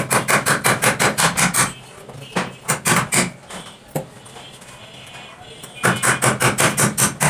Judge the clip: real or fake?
real